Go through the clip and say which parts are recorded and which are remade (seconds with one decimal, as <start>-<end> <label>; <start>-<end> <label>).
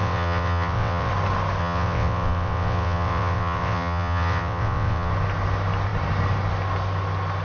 0.0-1.1 remade; 1.1-1.6 recorded; 1.6-5.1 remade; 5.1-7.4 recorded